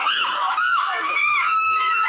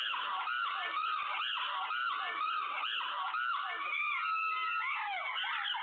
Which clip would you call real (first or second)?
second